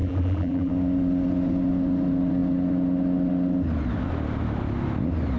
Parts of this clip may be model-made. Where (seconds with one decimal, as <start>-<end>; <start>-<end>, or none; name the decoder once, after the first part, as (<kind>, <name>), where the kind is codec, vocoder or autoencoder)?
0.0-0.7 (vocoder, BigVGAN v2)